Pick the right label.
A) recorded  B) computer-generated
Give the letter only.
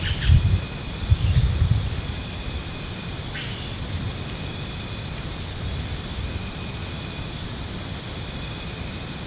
A